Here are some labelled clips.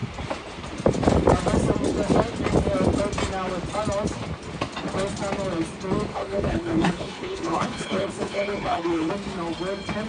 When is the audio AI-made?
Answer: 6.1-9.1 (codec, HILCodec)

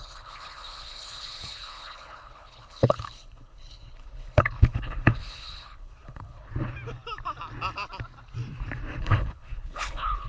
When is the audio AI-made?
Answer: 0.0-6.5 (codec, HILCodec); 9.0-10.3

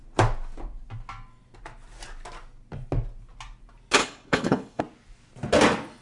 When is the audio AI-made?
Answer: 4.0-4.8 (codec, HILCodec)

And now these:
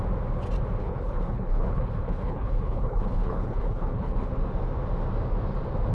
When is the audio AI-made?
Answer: 0.8-4.3 (codec, HILCodec)